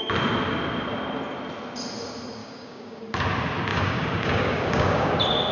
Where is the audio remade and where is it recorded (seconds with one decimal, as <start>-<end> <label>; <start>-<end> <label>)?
0.0-2.4 recorded; 2.4-3.0 remade; 3.0-3.7 recorded; 3.7-5.1 remade; 5.1-5.5 recorded